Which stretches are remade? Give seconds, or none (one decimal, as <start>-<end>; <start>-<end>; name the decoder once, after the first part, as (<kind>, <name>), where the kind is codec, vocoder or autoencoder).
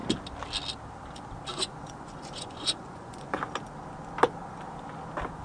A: 1.5-3.4 (vocoder, Vocos)